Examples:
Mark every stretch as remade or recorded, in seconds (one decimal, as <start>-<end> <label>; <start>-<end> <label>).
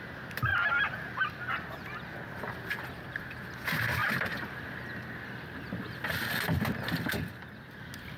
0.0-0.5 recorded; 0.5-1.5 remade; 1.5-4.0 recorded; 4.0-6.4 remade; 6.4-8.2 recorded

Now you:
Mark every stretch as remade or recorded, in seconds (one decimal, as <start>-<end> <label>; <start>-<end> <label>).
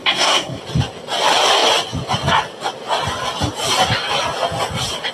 0.0-0.6 remade; 0.6-5.1 recorded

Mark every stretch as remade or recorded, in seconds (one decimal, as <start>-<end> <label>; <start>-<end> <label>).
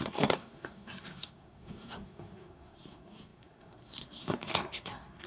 0.0-5.3 remade